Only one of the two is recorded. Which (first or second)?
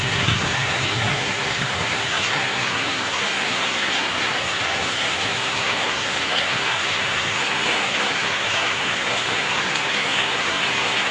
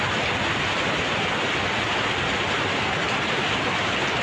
second